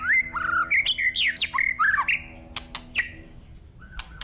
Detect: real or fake real